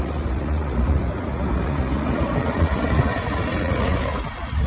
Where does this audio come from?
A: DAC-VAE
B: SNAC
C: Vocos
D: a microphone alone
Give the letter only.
C